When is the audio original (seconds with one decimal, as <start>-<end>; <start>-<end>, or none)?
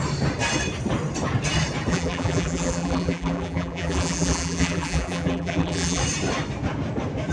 0.0-1.9; 6.0-7.3